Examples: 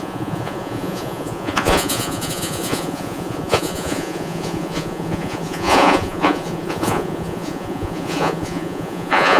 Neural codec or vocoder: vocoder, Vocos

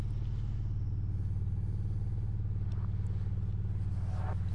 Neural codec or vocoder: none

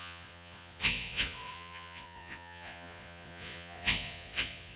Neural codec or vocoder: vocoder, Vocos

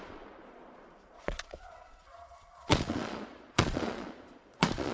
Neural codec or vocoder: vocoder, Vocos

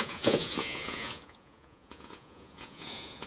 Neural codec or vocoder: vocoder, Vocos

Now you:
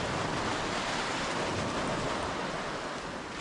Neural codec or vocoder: none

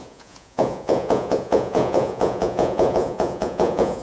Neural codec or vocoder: vocoder, Vocos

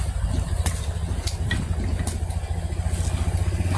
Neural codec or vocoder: none